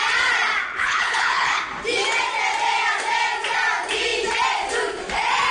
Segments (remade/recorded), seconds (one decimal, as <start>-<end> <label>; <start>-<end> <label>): 0.0-0.7 recorded; 0.7-1.6 remade; 1.6-5.5 recorded